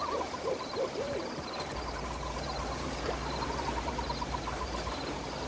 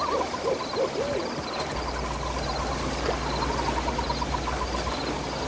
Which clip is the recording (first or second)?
second